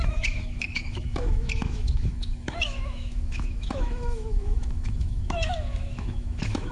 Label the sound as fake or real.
fake